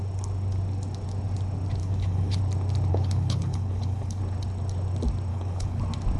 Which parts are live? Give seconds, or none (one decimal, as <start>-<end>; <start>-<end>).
0.0-1.8; 2.4-2.9; 4.2-5.3; 5.8-6.2